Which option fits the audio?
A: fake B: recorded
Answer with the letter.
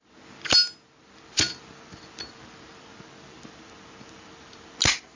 B